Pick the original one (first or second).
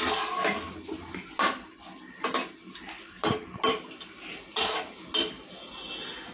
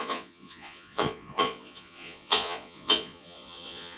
first